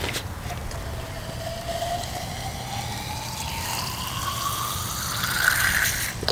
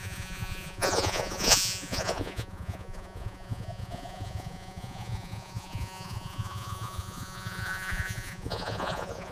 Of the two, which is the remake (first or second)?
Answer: second